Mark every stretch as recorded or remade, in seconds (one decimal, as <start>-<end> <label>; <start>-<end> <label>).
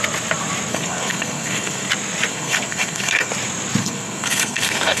0.0-0.7 recorded; 0.7-1.9 remade; 1.9-2.3 recorded; 2.3-3.3 remade; 3.3-3.8 recorded; 3.8-5.0 remade